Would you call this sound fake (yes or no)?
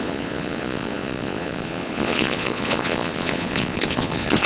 yes